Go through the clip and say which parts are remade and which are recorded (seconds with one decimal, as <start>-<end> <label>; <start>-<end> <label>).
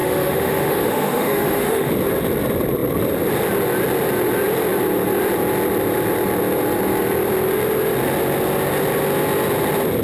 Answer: 0.0-1.9 remade; 1.9-10.0 recorded